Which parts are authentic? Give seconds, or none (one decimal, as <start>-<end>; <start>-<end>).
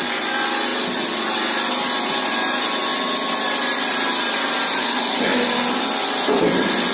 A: 0.7-2.1; 2.9-4.7; 5.3-6.0